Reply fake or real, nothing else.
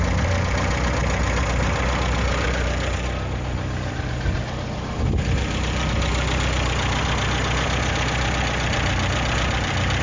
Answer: real